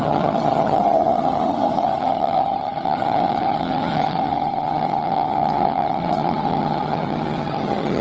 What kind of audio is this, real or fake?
fake